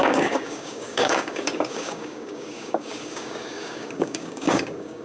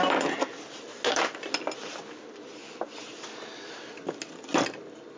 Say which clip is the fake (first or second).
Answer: first